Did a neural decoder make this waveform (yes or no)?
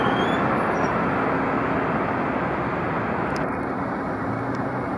no